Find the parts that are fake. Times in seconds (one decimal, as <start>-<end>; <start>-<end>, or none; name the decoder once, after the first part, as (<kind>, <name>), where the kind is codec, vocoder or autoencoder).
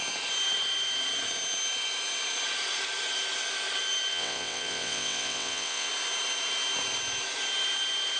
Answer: 4.1-5.9 (vocoder, WaveNeXt)